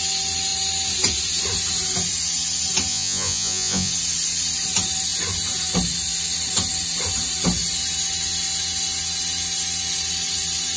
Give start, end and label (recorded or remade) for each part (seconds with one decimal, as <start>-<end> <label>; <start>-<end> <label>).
0.0-2.9 recorded; 2.9-3.9 remade; 3.9-10.8 recorded